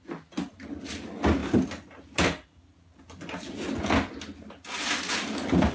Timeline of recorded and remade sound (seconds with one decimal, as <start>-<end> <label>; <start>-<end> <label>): 0.0-5.7 recorded